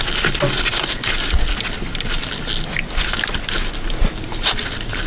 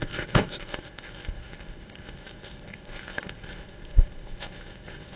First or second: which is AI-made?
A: second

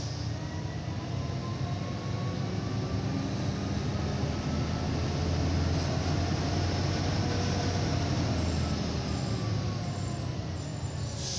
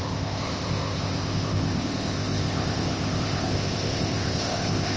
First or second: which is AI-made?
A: second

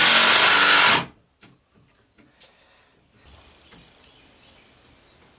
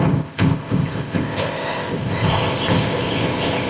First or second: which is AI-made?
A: second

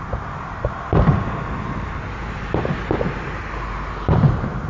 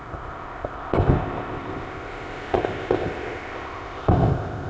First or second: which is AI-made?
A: second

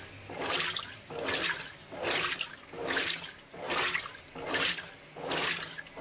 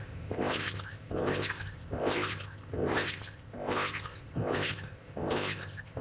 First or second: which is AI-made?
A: second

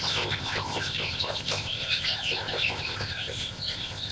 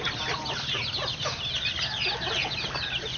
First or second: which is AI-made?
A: first